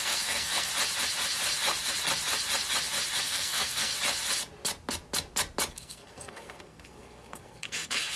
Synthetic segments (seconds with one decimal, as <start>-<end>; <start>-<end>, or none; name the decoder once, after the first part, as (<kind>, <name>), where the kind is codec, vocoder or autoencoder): 0.0-0.7 (codec, SNAC); 3.2-3.9; 5.7-8.2